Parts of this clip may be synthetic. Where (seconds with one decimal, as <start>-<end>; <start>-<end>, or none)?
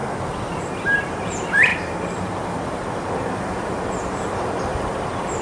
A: 0.6-5.4